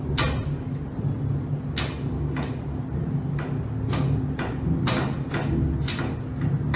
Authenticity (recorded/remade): recorded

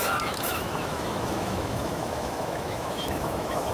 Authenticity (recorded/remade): remade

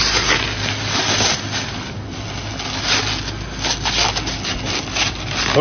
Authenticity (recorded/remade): recorded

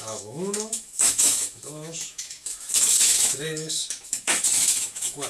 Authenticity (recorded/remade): remade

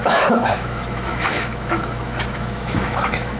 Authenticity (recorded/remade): remade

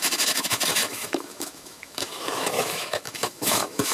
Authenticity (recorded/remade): remade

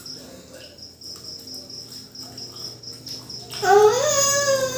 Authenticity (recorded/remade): recorded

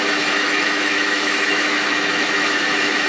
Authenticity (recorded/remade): remade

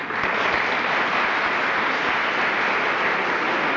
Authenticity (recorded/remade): recorded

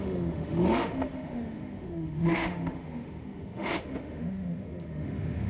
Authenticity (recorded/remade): remade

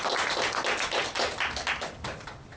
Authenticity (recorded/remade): recorded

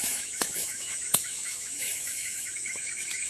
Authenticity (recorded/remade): remade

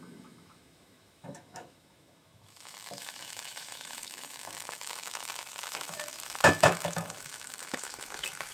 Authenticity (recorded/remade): remade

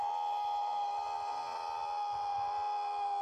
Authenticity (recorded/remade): recorded